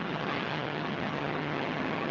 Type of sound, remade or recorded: remade